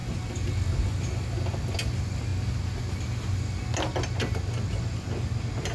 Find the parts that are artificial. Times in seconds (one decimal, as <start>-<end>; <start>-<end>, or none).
none